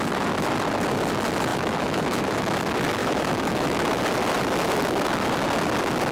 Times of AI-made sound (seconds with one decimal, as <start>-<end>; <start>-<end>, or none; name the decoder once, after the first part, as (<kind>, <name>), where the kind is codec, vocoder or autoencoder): 1.5-2.6 (autoencoder, DAC-VAE); 3.0-4.0